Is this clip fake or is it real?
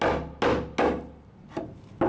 real